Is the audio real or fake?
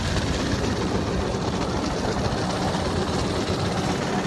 real